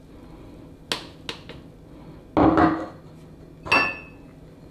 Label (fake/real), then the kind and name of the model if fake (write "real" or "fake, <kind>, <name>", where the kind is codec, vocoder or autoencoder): real